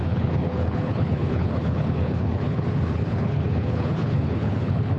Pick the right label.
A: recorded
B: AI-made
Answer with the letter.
B